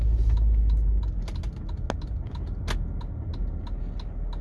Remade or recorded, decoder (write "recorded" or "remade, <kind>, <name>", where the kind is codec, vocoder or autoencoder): recorded